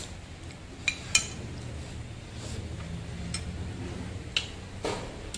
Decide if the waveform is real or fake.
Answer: real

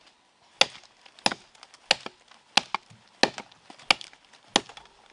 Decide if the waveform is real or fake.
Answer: real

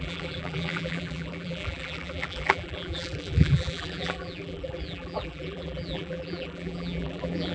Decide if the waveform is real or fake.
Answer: fake